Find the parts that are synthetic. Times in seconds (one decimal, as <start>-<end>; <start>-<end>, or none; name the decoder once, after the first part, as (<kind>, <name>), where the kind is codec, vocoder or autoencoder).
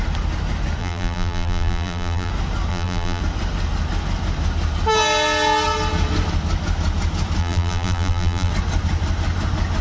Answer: 0.8-2.3 (vocoder, BigVGAN v2); 2.7-3.2; 7.4-8.5